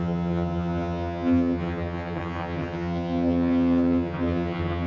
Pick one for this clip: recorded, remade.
remade